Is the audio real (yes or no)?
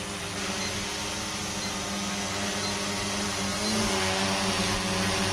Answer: yes